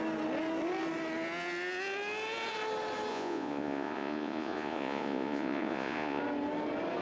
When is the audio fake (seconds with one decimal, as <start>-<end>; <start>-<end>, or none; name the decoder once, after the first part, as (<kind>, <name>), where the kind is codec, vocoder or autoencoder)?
3.1-6.2 (vocoder, Vocos)